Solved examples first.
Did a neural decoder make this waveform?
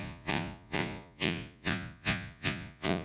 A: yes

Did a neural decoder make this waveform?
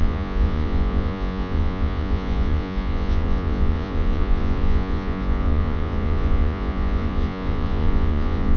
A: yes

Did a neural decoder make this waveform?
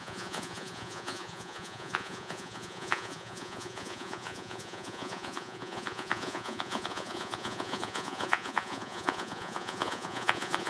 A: yes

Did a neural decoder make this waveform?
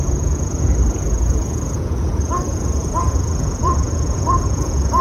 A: yes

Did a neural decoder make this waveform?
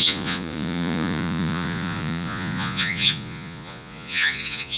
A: yes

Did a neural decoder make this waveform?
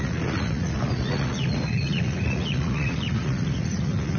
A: yes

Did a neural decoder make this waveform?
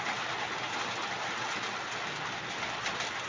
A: no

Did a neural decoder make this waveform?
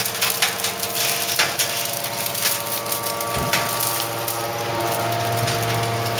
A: no